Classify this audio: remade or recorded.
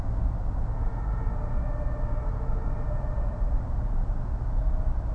recorded